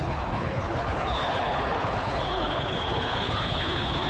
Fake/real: fake